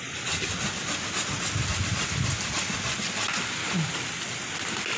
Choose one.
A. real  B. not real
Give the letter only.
A